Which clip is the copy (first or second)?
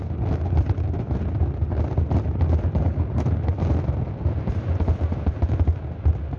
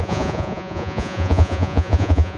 second